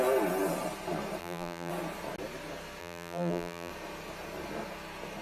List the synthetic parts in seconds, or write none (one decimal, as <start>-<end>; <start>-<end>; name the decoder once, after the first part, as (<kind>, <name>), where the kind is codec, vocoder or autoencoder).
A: 1.2-1.7 (vocoder, BigVGAN v2); 2.8-3.7